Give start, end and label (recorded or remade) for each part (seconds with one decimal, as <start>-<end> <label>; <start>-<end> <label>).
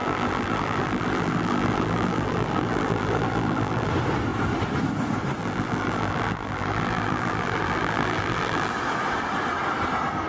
0.0-3.9 remade; 3.9-5.4 recorded; 5.4-8.7 remade; 8.7-10.3 recorded